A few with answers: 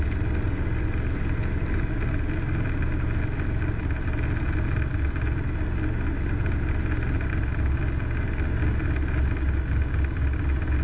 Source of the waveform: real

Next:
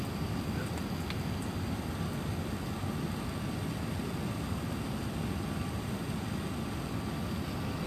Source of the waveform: real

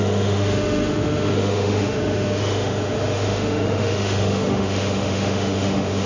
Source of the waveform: fake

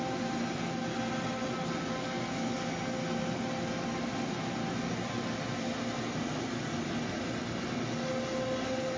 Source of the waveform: real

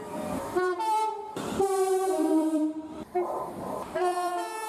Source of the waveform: fake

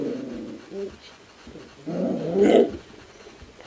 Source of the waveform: fake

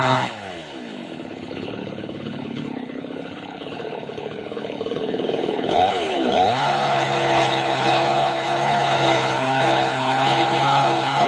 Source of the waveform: fake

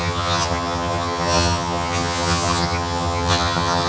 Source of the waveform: fake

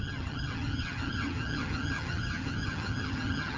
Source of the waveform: fake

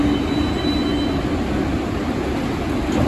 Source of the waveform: real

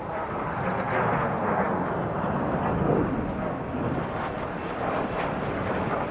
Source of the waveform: real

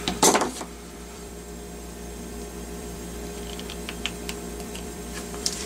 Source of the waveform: fake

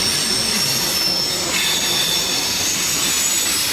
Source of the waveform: real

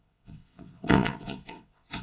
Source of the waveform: fake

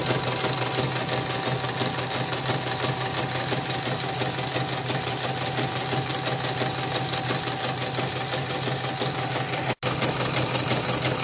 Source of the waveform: real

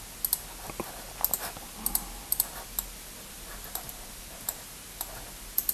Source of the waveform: real